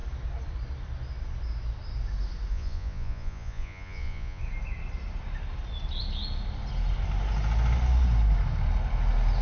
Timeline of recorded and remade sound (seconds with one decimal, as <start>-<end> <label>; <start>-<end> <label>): 0.0-2.5 recorded; 2.5-4.4 remade; 4.4-9.4 recorded